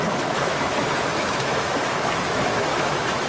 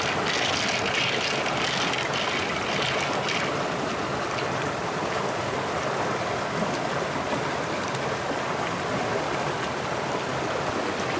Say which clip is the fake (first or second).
first